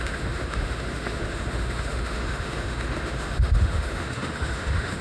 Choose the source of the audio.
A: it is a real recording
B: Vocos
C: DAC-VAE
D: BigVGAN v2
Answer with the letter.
C